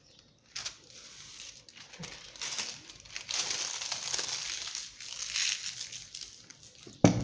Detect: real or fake real